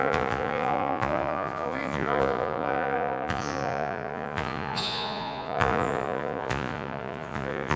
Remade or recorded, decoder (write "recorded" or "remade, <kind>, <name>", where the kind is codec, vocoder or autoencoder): remade, vocoder, Vocos